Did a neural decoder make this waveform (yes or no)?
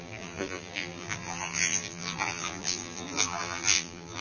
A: yes